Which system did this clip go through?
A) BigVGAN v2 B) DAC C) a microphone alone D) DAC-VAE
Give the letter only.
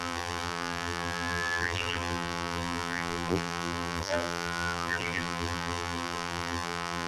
A